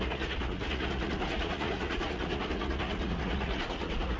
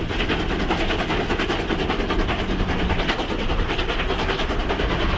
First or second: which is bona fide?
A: second